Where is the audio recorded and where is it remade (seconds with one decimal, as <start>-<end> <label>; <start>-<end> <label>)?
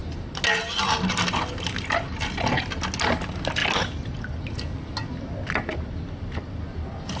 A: 0.0-7.2 recorded